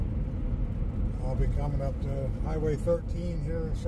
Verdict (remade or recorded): recorded